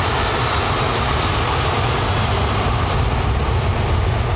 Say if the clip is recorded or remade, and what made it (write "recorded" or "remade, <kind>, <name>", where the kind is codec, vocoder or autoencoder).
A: recorded